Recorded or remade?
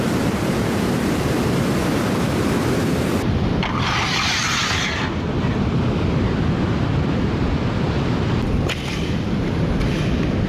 recorded